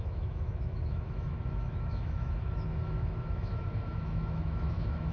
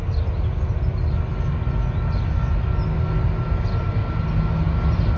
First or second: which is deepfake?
first